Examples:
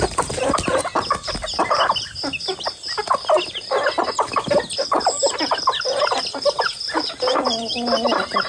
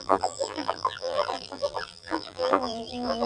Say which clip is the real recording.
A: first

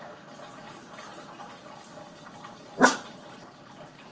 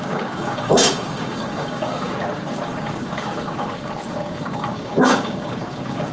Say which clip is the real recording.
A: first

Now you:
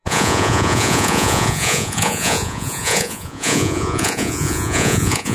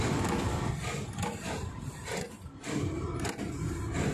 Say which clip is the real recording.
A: second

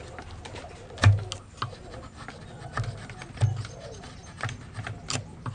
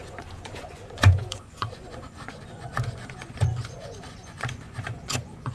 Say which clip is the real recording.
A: first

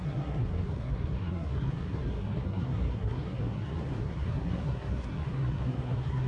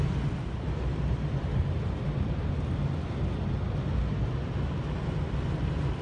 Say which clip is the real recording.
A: second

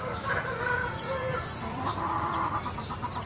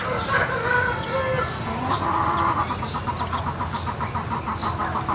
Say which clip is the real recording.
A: second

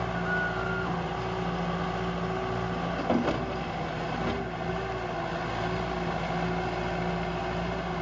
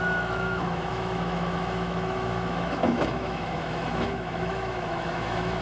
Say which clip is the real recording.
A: first